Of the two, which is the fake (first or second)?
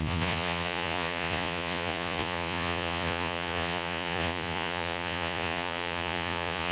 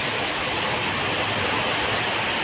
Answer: first